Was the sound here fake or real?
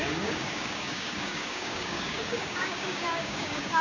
fake